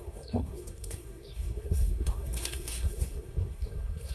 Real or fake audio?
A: fake